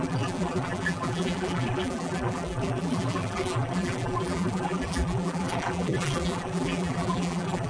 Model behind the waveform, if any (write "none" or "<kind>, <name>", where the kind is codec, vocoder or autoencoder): vocoder, BigVGAN v2